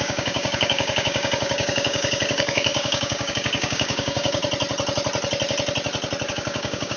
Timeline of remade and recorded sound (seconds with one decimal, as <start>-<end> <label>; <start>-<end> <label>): 0.0-4.4 remade; 4.4-6.3 recorded; 6.3-7.0 remade